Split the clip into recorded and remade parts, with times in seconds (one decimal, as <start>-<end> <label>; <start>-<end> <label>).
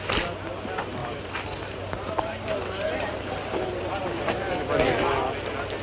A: 0.0-1.0 recorded; 1.0-4.5 remade; 4.5-5.8 recorded